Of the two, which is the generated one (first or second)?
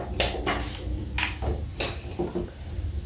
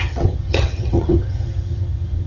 second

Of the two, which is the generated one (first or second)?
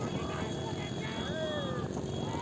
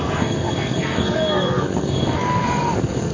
second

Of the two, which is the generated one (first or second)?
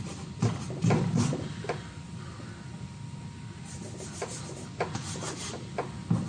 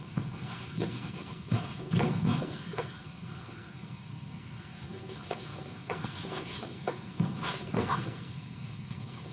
second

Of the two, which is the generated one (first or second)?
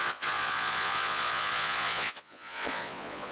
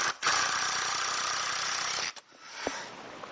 first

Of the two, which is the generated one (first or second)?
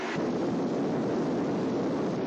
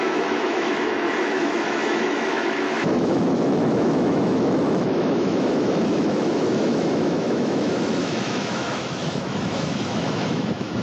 second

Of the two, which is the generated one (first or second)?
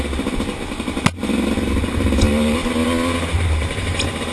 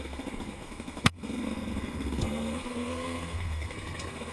second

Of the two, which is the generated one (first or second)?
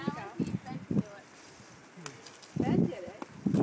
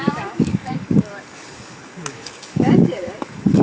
second